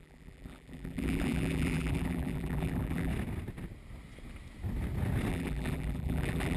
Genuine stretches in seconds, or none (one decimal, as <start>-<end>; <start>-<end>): 3.1-5.3

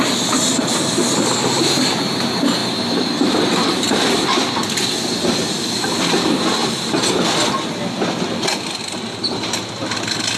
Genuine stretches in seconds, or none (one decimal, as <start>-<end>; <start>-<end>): 0.0-2.6; 5.0-10.4

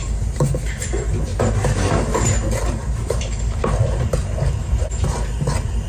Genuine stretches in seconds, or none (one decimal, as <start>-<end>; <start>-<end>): 0.0-0.8; 1.3-2.7; 4.1-5.9